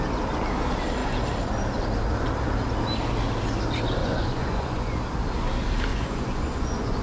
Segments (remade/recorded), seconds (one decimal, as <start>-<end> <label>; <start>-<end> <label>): 0.0-4.0 recorded; 4.0-5.0 remade; 5.0-5.9 recorded; 5.9-7.0 remade